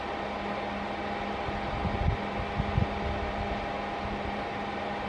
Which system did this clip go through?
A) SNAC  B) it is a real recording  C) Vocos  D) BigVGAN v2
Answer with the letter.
B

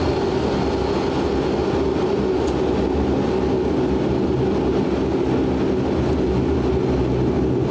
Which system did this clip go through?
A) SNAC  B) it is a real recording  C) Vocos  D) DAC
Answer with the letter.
B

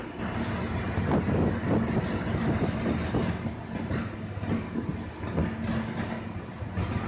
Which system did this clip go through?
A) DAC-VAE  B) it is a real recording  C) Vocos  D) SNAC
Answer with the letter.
B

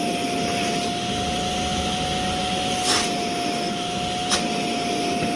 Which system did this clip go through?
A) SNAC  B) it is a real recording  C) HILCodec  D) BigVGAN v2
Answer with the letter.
B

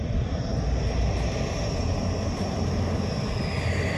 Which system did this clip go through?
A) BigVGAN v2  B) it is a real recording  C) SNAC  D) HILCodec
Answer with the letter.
B